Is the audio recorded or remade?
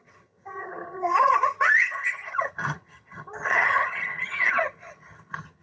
remade